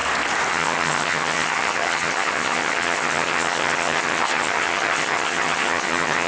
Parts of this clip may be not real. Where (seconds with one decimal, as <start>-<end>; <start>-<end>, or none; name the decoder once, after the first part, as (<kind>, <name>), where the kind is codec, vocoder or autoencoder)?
0.5-6.3 (vocoder, HiFi-GAN)